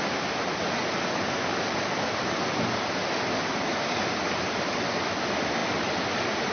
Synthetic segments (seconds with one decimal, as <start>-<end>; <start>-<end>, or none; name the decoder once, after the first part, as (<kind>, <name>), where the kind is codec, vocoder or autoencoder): 0.8-4.2 (vocoder, BigVGAN v2)